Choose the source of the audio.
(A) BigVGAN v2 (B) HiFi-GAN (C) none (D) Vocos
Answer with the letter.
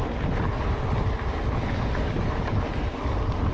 C